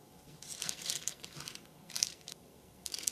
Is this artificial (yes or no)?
yes